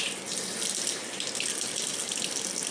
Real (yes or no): yes